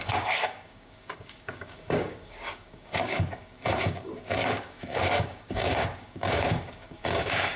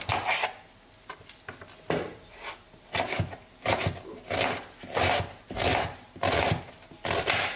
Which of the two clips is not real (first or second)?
first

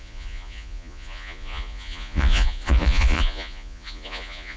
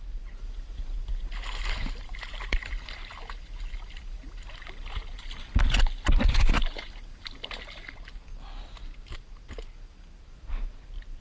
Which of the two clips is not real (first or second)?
first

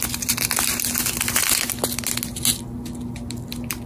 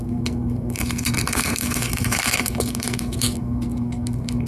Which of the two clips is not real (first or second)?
second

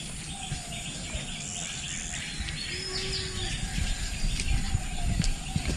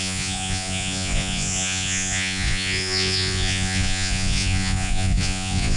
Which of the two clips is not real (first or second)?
second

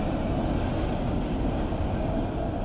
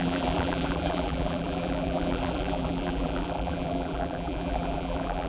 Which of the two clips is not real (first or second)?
second